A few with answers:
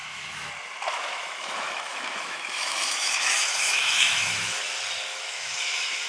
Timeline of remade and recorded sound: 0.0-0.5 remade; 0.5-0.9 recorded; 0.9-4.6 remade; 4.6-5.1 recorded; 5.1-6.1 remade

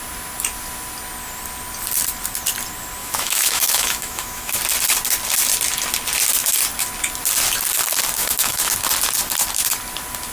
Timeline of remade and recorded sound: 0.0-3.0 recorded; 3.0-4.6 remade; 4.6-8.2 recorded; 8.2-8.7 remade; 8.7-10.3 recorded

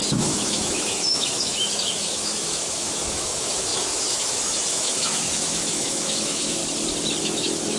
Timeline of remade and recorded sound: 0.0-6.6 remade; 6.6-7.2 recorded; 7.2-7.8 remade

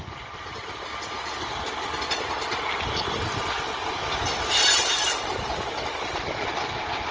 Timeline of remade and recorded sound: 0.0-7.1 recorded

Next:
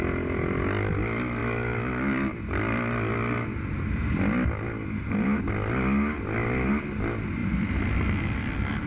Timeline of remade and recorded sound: 0.0-8.9 recorded

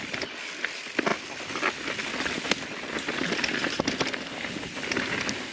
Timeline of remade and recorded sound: 0.0-5.5 recorded

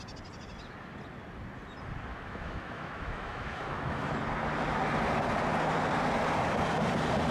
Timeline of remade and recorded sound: 0.0-2.1 recorded; 2.1-4.1 remade; 4.1-7.3 recorded

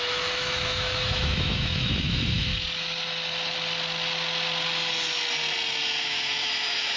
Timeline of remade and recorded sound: 0.0-2.5 remade; 2.5-6.0 recorded; 6.0-7.0 remade